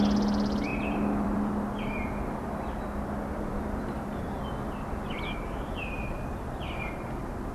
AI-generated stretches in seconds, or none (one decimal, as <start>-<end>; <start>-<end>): 0.7-1.5; 3.3-6.9